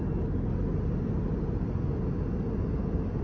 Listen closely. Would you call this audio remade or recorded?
recorded